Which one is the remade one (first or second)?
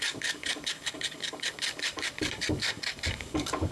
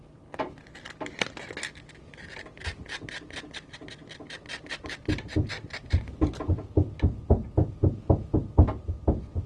first